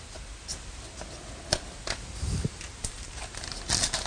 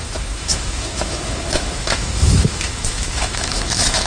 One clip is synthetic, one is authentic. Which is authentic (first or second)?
first